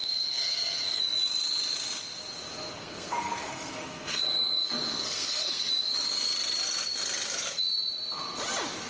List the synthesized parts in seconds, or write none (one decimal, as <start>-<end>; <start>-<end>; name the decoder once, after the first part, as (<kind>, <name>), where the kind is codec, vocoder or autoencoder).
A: 0.0-1.0 (codec, SNAC); 2.8-5.7